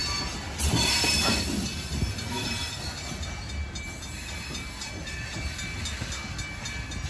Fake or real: real